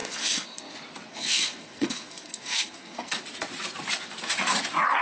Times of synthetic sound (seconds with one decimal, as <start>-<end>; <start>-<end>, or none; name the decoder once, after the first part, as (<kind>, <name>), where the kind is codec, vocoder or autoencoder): 0.0-0.7 (codec, SNAC); 1.1-3.2